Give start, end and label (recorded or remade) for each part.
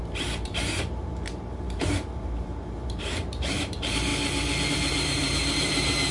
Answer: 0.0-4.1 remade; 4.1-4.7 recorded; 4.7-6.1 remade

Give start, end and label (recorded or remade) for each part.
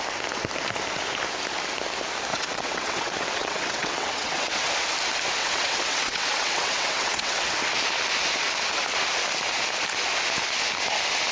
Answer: 0.0-2.3 recorded; 2.3-4.7 remade; 4.7-5.4 recorded; 5.4-7.5 remade; 7.5-11.3 recorded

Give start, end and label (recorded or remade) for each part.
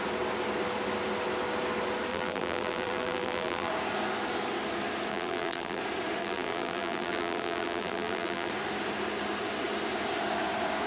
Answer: 0.0-2.1 recorded; 2.1-3.7 remade; 3.7-5.1 recorded; 5.1-5.8 remade; 5.8-6.2 recorded; 6.2-8.5 remade; 8.5-10.9 recorded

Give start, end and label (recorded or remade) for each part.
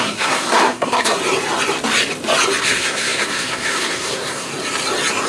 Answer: 0.0-1.2 remade; 1.2-2.6 recorded; 2.6-4.5 remade; 4.5-5.3 recorded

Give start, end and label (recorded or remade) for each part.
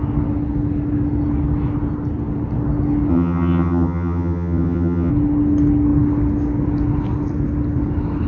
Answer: 0.0-3.1 recorded; 3.1-5.1 remade; 5.1-8.3 recorded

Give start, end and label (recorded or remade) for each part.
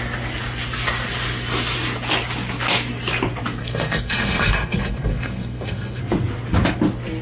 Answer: 0.0-3.6 recorded; 3.6-6.0 remade; 6.0-7.2 recorded